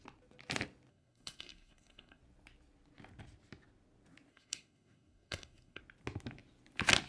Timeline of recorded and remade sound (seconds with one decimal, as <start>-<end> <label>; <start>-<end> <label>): 0.0-0.9 recorded; 0.9-2.2 remade; 2.2-4.3 recorded; 4.3-5.8 remade; 5.8-7.1 recorded